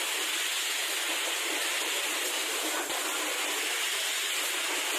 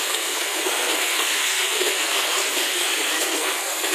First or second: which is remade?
second